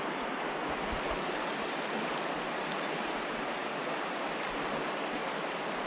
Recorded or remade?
recorded